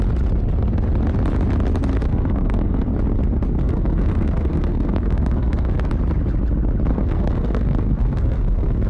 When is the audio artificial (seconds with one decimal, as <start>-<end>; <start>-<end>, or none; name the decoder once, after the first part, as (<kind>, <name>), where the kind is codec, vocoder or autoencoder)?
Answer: 1.9-2.8 (codec, SNAC); 3.6-5.9; 6.9-8.9